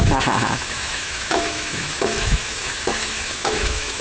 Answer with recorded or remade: remade